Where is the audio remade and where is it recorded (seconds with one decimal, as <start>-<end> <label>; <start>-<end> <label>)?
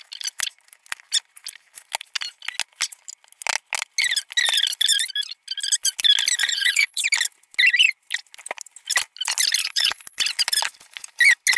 0.0-6.4 recorded; 6.4-7.0 remade; 7.0-9.6 recorded; 9.6-10.2 remade; 10.2-11.6 recorded